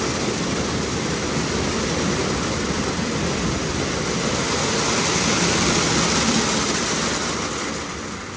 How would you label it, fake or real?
real